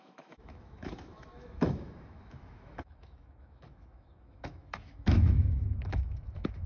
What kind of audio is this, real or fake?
fake